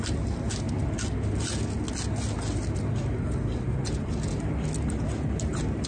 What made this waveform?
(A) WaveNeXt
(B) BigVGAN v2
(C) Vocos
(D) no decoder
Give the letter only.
D